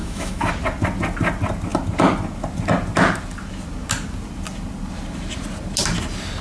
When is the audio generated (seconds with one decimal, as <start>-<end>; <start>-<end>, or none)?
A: 0.0-0.5